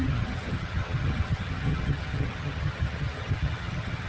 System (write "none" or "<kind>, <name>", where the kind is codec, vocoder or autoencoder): vocoder, HiFi-GAN